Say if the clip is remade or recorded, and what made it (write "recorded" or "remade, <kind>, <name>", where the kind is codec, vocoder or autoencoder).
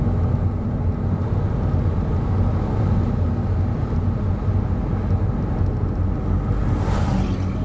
recorded